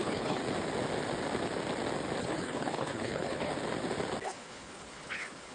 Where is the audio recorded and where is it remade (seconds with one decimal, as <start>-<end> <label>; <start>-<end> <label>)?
0.0-0.4 remade; 0.4-2.2 recorded; 2.2-3.5 remade; 3.5-4.2 recorded; 4.2-5.5 remade